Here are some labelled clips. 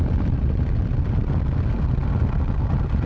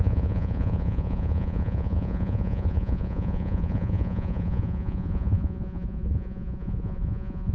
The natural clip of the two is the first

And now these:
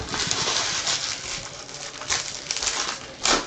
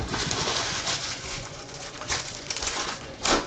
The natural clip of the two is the first